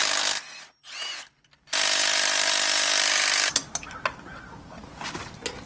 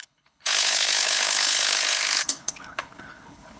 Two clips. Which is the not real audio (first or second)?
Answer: second